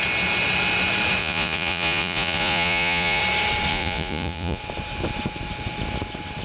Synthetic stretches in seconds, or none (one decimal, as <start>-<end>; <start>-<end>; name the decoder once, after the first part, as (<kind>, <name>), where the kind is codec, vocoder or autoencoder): 1.2-3.2 (vocoder, Vocos); 3.7-4.6